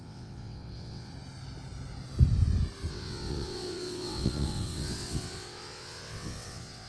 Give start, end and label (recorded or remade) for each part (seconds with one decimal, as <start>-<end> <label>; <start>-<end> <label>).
0.0-1.1 remade; 1.1-2.9 recorded; 2.9-6.9 remade